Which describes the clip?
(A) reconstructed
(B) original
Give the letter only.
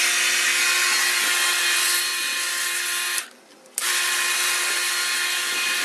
B